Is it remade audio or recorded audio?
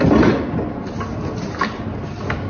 recorded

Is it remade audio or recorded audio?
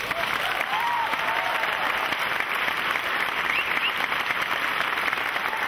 remade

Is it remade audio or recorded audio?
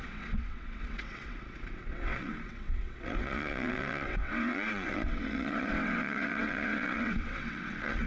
remade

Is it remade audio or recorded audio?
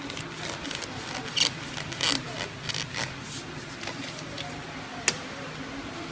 recorded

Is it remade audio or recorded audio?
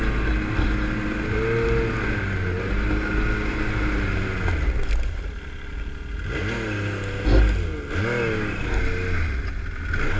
recorded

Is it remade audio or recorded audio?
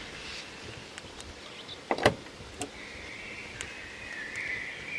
recorded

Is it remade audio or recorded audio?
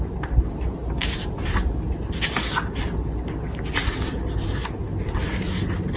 recorded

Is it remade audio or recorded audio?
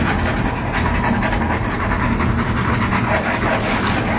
recorded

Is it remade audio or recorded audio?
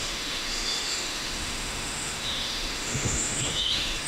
remade